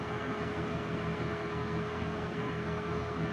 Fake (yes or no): yes